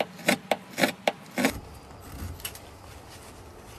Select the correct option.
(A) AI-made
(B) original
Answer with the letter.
B